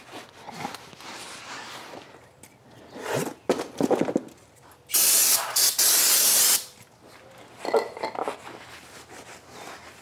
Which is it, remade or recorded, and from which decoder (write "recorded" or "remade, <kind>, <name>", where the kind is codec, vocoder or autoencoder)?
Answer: recorded